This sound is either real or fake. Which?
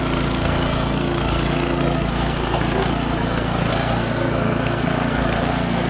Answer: fake